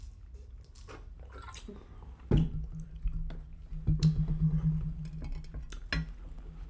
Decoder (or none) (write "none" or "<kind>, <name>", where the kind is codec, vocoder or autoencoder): none